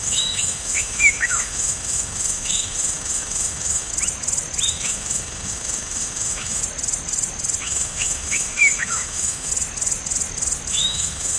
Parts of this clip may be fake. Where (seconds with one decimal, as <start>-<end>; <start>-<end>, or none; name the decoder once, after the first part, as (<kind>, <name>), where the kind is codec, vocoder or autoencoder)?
0.0-3.9 (autoencoder, DAC-VAE); 4.7-6.6; 7.6-9.5; 10.7-11.4